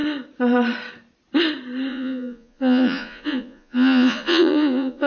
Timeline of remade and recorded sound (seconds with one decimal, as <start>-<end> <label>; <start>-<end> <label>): 0.0-1.9 recorded; 1.9-5.1 remade